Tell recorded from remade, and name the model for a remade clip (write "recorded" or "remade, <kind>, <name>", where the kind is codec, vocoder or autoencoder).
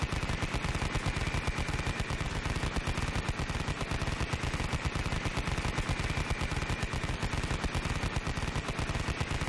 recorded